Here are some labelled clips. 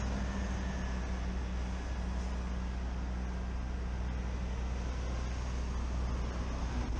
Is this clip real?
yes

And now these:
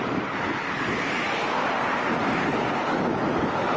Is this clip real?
yes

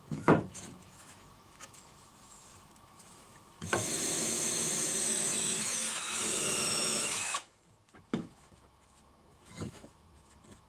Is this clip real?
no